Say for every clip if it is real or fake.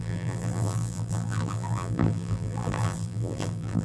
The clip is fake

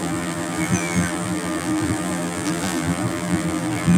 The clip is fake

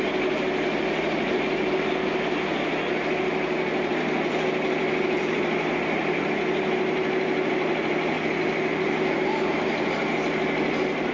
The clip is real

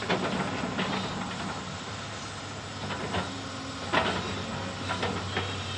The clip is real